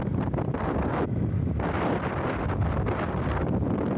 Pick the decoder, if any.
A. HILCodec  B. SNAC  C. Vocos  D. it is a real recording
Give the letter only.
D